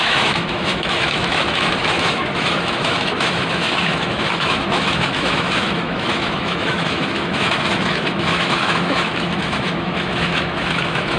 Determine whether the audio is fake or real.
fake